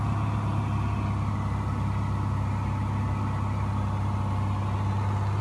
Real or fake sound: real